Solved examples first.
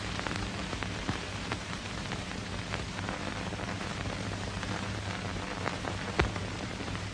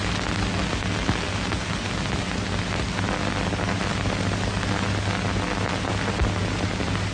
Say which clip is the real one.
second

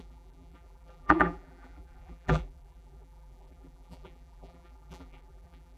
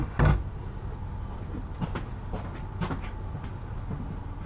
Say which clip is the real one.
second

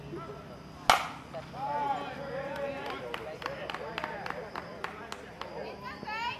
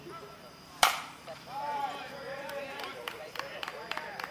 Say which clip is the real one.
first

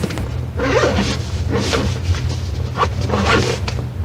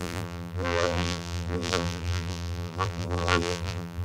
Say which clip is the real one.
first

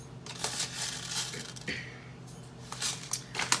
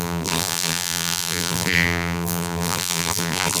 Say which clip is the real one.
first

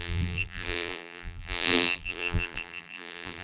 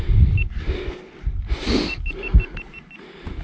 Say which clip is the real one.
second